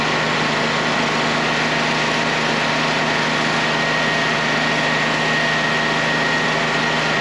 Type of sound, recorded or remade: recorded